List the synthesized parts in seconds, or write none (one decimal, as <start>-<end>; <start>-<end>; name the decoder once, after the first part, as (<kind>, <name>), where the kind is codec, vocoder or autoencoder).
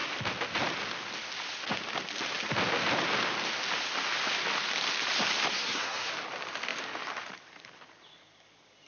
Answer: 5.5-6.1 (codec, SNAC)